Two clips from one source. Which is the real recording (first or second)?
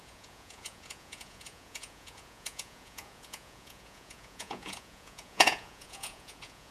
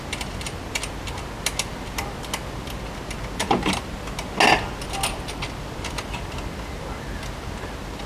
second